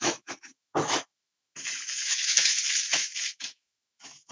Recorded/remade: remade